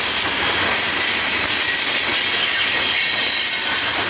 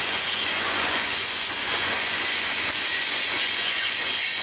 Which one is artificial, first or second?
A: second